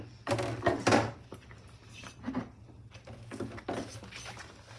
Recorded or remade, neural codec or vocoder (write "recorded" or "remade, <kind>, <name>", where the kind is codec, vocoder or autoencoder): recorded